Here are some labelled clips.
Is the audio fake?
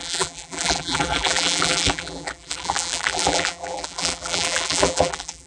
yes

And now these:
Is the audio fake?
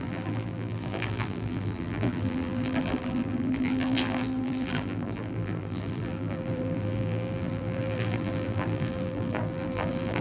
yes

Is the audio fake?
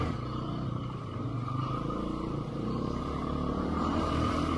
yes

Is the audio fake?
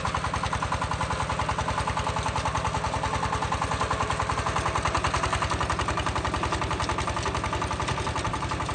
no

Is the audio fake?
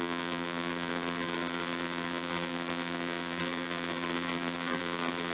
yes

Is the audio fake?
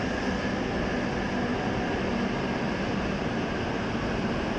no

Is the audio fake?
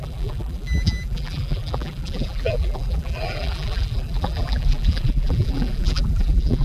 yes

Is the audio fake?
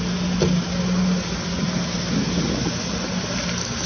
no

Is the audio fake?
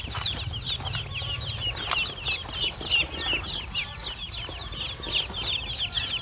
no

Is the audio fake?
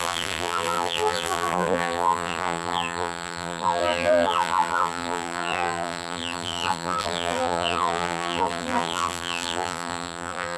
yes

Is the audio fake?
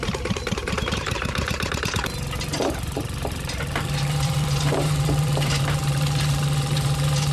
yes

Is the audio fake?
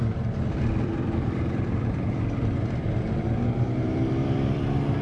yes